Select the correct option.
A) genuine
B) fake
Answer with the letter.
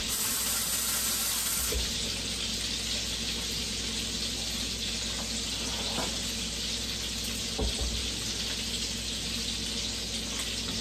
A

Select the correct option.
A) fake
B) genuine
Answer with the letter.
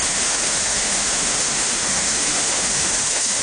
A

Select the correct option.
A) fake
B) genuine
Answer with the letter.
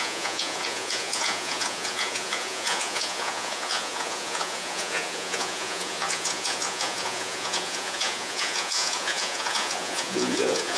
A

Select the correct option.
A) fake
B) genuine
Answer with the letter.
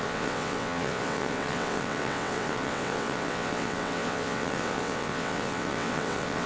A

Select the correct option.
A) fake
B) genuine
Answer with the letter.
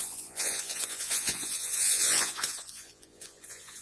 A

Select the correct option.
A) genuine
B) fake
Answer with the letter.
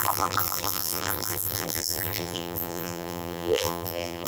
B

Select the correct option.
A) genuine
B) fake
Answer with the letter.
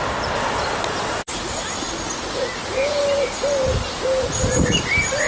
A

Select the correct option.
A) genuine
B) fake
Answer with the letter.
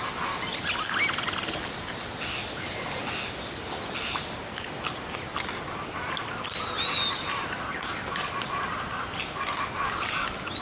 A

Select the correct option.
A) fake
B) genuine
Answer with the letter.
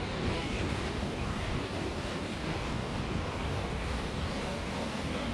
A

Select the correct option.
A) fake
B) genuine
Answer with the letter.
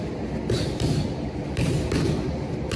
B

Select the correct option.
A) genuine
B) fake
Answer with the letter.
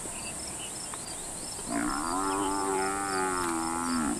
A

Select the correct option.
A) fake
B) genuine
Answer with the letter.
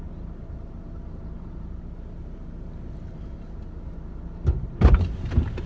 B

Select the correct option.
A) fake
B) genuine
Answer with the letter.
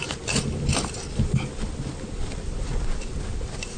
B